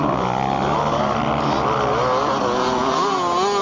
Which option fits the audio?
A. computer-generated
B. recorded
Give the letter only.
B